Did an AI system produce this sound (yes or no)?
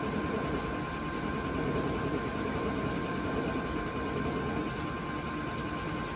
no